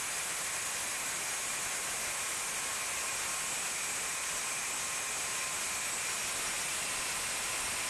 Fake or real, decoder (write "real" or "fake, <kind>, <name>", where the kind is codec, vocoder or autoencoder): real